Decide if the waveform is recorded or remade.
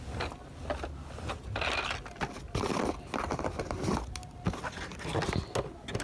recorded